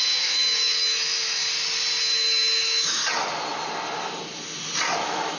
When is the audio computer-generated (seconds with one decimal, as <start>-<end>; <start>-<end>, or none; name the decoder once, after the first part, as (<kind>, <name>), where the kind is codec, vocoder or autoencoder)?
0.0-1.4 (autoencoder, DAC-VAE); 2.0-3.0; 5.0-5.4